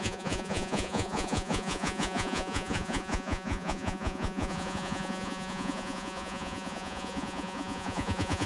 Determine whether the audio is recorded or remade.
remade